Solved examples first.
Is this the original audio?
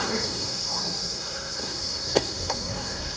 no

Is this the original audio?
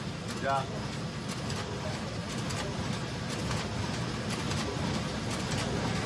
yes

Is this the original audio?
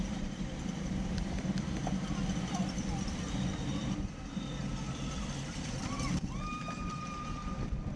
no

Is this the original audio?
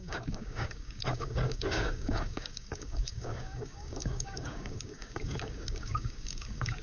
no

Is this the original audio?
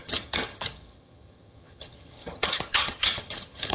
no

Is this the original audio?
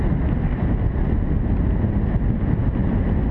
yes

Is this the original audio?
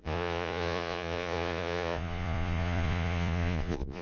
no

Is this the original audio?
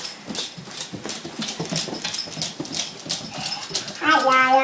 yes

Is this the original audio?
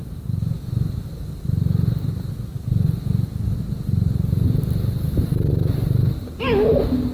yes